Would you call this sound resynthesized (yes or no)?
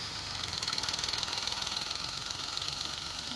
yes